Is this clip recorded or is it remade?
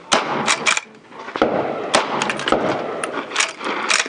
recorded